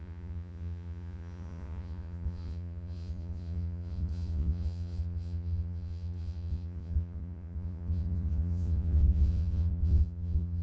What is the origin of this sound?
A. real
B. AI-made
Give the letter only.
B